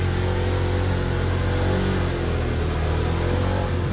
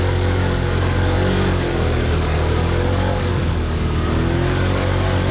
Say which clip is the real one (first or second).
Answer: first